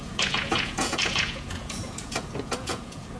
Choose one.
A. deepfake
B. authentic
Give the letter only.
A